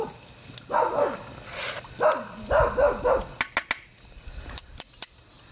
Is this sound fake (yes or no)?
no